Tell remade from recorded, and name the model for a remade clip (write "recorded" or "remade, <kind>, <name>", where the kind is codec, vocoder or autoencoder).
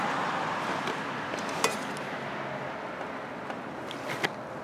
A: recorded